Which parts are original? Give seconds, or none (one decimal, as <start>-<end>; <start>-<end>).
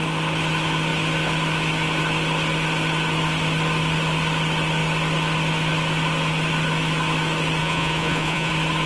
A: 0.0-7.6; 8.5-8.9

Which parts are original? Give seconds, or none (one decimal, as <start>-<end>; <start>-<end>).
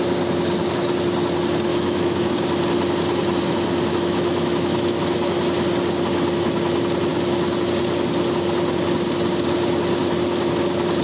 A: 0.0-1.7; 2.3-3.9; 5.0-11.0